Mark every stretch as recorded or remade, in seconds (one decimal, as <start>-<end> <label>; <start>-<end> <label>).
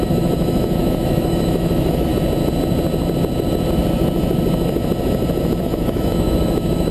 0.0-2.1 remade; 2.1-5.6 recorded; 5.6-6.9 remade